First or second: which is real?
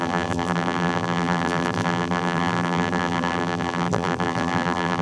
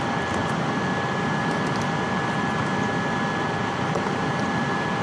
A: second